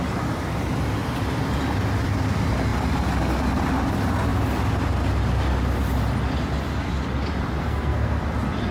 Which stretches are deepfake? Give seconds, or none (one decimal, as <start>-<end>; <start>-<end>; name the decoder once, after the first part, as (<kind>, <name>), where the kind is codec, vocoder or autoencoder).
7.6-8.2 (codec, SNAC)